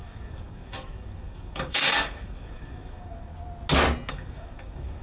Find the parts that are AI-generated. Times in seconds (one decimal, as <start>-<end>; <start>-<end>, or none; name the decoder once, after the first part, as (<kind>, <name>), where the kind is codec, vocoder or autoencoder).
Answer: 0.0-3.3 (codec, DAC); 4.1-5.0